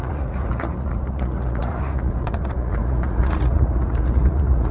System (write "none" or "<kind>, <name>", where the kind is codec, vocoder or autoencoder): vocoder, Vocos